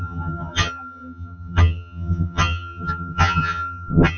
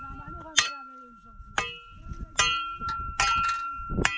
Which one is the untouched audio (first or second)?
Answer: second